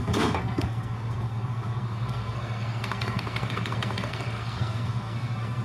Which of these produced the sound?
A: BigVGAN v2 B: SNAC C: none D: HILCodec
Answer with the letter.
B